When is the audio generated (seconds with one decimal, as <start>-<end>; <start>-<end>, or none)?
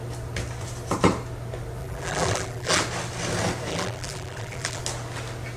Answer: 1.8-2.8; 3.7-4.8